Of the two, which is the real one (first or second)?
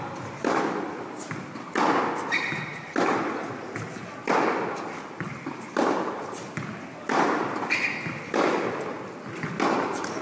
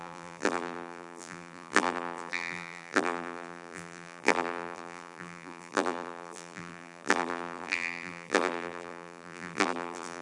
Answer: first